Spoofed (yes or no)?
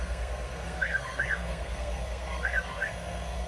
yes